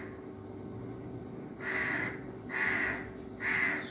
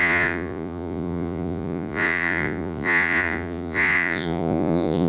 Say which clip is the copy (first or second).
second